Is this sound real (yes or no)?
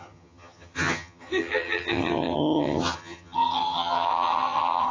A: no